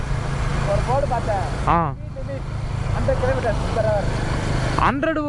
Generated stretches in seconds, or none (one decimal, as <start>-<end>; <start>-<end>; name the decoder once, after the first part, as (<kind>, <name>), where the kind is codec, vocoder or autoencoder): none